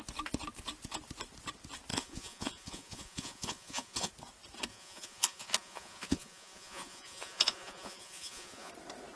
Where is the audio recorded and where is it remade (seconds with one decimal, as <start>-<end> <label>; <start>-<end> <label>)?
0.0-1.9 recorded; 1.9-4.1 remade; 4.1-4.7 recorded; 4.7-8.7 remade; 8.7-9.2 recorded